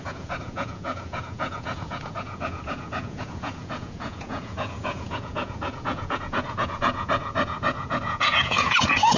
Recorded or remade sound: remade